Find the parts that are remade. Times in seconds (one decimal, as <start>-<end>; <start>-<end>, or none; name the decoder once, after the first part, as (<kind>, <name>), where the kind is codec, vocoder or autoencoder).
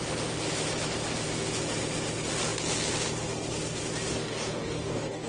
4.1-5.3 (codec, DAC)